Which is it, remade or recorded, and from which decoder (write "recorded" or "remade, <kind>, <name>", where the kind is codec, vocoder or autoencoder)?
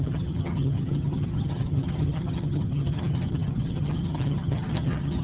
remade, vocoder, HiFi-GAN